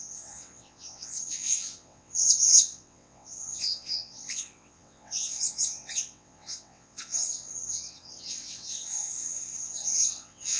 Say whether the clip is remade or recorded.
remade